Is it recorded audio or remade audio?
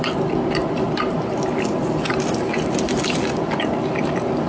recorded